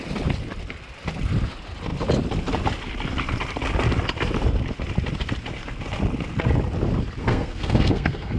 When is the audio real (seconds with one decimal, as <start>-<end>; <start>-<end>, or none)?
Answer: 0.0-7.2